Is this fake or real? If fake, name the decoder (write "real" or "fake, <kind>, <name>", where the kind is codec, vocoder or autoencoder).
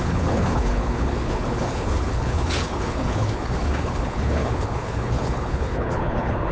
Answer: fake, codec, HILCodec